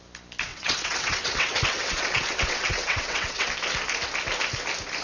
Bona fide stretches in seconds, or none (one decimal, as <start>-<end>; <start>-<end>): 0.0-0.5; 3.5-5.0

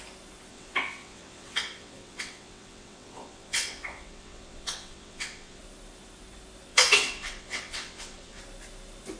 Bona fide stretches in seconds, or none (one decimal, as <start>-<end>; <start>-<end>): 0.0-0.5; 5.6-6.7; 8.4-9.2

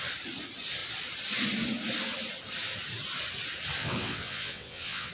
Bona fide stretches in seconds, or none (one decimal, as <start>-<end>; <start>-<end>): 0.0-3.8

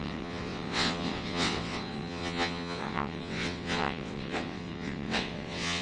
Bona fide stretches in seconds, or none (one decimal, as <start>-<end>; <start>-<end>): none